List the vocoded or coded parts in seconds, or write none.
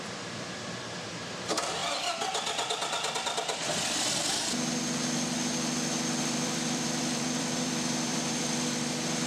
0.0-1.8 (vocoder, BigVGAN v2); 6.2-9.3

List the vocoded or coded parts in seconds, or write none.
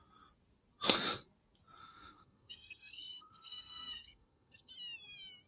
1.8-4.7 (codec, SNAC)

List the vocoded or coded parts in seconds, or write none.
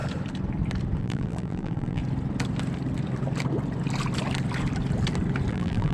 1.0-2.0 (vocoder, BigVGAN v2); 5.5-5.9